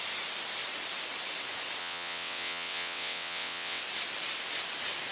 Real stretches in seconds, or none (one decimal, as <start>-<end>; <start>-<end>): 0.0-1.8; 3.8-5.1